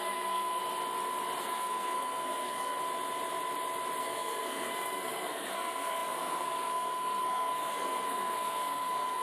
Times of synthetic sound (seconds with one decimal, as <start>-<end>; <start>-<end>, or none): 0.0-0.6; 1.4-2.8; 4.0-9.2